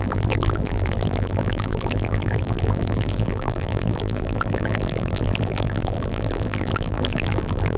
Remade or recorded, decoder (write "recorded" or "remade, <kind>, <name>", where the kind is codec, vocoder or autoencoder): remade, vocoder, BigVGAN v2